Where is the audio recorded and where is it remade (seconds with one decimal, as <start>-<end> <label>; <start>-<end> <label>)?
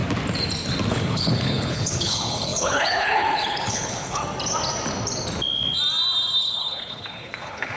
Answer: 0.0-0.9 recorded; 0.9-4.2 remade; 4.2-6.4 recorded; 6.4-7.8 remade